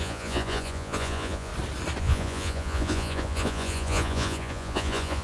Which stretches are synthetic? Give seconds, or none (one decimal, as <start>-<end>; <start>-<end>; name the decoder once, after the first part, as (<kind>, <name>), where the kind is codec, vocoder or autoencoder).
0.0-1.5 (vocoder, Vocos); 2.0-5.2

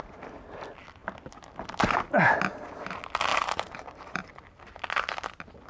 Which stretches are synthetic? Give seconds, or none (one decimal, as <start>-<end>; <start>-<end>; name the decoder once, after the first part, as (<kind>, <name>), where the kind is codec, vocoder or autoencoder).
3.3-4.3 (vocoder, BigVGAN v2)

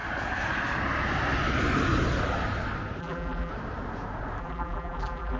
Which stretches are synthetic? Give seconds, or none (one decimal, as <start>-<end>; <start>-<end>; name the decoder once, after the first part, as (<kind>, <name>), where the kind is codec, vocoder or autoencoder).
3.0-3.5 (vocoder, BigVGAN v2); 4.4-5.4

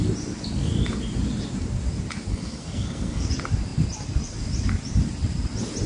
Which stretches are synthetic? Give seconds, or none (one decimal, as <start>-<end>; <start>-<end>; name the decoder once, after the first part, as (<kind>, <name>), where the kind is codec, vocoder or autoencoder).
2.3-3.3 (codec, SNAC)

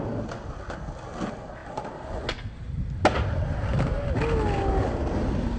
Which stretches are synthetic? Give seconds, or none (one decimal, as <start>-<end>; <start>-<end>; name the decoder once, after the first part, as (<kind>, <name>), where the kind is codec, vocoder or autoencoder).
none

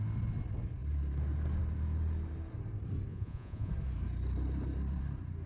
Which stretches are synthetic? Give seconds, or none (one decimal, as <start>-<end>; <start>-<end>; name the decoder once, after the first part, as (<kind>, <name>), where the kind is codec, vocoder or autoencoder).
3.1-3.7 (vocoder, Vocos)

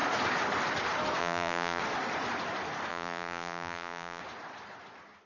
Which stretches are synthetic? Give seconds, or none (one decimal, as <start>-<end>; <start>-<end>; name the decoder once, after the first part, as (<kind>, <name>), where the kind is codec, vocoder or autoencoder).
1.2-1.8 (vocoder, BigVGAN v2); 2.9-4.2